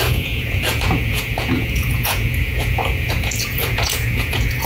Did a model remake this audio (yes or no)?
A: yes